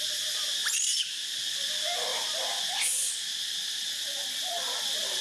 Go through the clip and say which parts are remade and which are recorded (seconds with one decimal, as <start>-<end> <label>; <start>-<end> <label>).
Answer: 0.0-0.6 recorded; 0.6-1.4 remade; 1.4-5.2 recorded